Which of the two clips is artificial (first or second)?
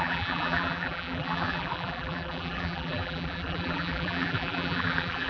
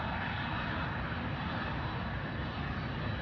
first